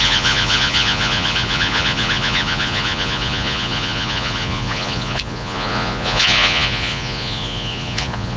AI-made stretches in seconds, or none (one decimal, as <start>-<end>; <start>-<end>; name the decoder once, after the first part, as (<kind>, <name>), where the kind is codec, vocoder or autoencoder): 0.0-8.4 (vocoder, Vocos)